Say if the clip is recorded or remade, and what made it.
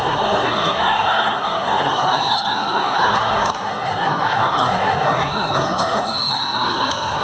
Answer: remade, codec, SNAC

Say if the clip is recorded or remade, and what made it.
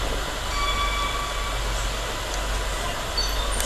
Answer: recorded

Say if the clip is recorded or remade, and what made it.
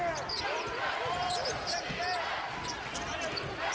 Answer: recorded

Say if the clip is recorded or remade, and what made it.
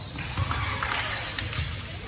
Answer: recorded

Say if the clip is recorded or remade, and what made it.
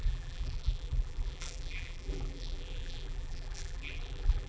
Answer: remade, vocoder, BigVGAN v2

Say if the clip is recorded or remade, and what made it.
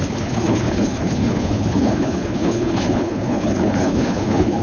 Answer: remade, codec, HILCodec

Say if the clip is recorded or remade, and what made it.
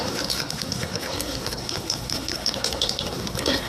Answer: remade, codec, SNAC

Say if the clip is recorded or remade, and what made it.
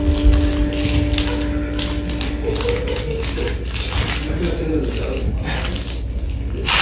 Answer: recorded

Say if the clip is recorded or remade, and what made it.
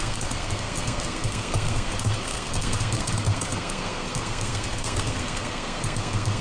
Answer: remade, codec, SNAC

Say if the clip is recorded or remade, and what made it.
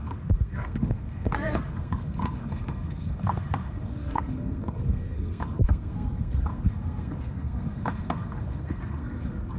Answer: remade, codec, SNAC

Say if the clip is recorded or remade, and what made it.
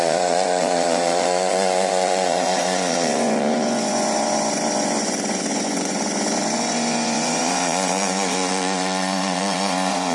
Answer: remade, vocoder, Vocos